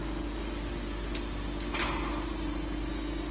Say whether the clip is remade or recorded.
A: recorded